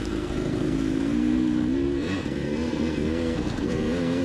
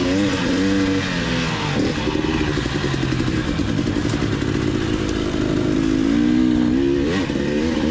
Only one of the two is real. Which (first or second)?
second